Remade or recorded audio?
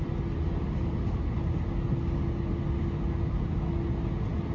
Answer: recorded